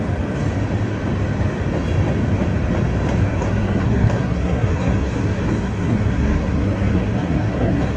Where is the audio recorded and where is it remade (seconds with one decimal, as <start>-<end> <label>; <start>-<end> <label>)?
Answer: 0.0-3.3 recorded; 3.3-8.0 remade